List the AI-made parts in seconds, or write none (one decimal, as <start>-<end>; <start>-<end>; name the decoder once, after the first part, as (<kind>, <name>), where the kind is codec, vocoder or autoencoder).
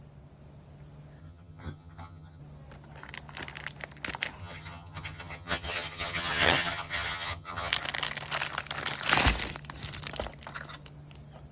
1.2-2.4 (vocoder, HiFi-GAN); 4.4-7.7